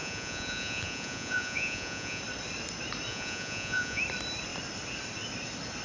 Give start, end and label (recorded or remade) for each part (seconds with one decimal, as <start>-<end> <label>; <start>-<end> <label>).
0.0-2.2 remade; 2.2-3.1 recorded; 3.1-4.0 remade; 4.0-5.8 recorded

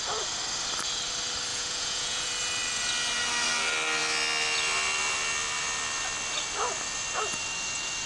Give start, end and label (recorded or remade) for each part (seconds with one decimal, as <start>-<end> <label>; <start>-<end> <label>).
0.0-1.5 recorded; 1.5-2.3 remade; 2.3-8.1 recorded

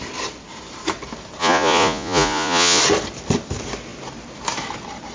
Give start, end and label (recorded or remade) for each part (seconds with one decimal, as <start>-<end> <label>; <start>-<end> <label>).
0.0-1.4 recorded; 1.4-2.8 remade; 2.8-5.1 recorded

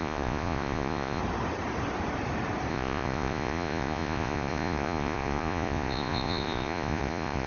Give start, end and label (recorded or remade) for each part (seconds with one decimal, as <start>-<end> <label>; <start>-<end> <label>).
0.0-1.2 remade; 1.2-2.7 recorded; 2.7-7.5 remade

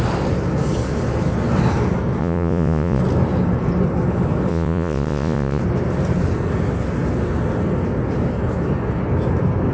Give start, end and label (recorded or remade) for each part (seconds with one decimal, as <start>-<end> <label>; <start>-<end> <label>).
0.0-2.2 recorded; 2.2-3.0 remade; 3.0-4.5 recorded; 4.5-5.6 remade; 5.6-9.7 recorded

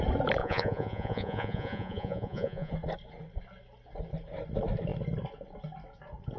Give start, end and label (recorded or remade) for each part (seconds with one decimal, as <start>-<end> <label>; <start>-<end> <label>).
0.0-0.4 recorded; 0.4-2.7 remade; 2.7-6.4 recorded